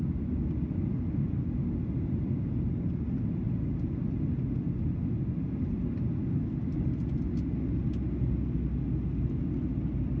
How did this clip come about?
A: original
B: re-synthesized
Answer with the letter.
A